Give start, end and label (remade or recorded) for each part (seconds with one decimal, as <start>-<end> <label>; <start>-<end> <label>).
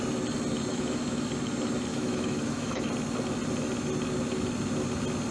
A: 0.0-0.7 recorded; 0.7-1.2 remade; 1.2-1.9 recorded; 1.9-2.9 remade; 2.9-5.3 recorded